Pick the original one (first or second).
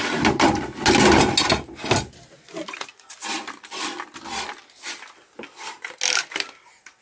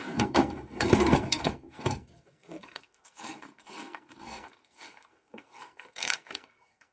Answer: first